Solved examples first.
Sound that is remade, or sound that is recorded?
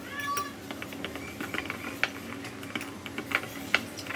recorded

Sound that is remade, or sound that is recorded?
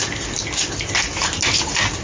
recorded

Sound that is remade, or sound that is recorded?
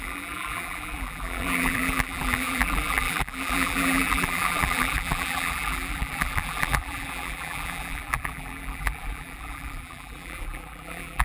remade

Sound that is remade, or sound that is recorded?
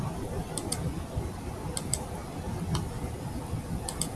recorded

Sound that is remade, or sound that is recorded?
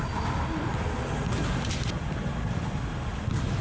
recorded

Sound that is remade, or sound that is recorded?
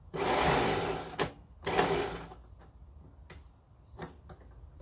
recorded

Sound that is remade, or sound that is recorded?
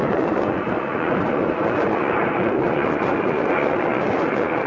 remade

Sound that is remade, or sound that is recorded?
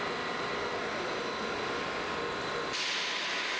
recorded